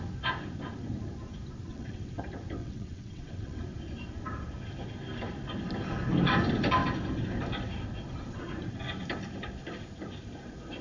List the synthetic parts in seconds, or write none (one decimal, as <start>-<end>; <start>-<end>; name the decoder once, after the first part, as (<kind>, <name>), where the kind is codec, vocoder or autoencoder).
1.7-2.2 (vocoder, WaveNeXt); 2.6-3.6